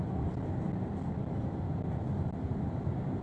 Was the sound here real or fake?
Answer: real